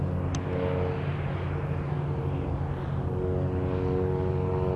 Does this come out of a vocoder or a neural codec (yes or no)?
no